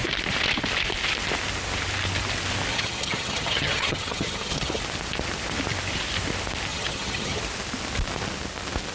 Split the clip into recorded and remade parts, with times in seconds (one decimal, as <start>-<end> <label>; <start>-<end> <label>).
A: 0.0-2.7 recorded; 2.7-4.8 remade; 4.8-6.7 recorded; 6.7-7.4 remade; 7.4-8.9 recorded